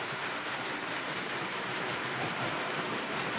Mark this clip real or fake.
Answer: fake